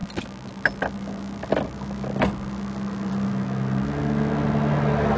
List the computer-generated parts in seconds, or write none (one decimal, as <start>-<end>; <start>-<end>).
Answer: none

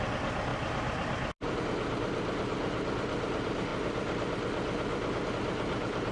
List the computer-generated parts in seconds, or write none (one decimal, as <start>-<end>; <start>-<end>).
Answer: 0.5-1.6